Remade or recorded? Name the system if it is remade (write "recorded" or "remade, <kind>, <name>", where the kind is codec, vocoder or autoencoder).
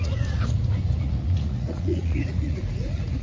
remade, vocoder, Vocos